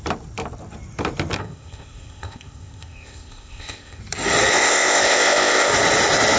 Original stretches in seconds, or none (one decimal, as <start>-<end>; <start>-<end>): 0.0-1.4; 4.0-4.5; 5.7-6.4